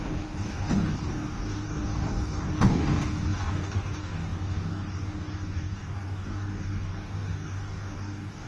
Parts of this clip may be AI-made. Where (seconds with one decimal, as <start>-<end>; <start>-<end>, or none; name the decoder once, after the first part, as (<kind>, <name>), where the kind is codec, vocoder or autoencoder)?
0.0-8.5 (codec, DAC)